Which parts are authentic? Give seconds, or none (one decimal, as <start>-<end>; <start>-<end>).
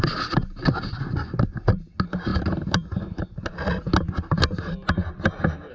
0.0-5.7